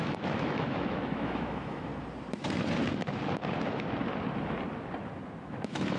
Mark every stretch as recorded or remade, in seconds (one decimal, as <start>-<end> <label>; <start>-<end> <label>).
0.0-1.9 remade; 1.9-5.5 recorded; 5.5-6.0 remade